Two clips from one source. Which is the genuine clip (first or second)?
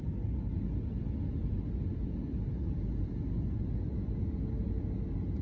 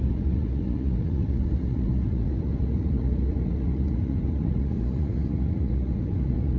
first